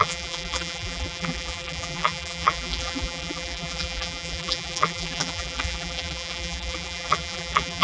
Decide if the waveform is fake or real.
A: fake